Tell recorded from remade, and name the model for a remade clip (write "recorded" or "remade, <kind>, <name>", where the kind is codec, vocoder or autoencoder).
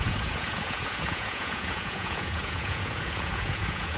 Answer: remade, vocoder, Vocos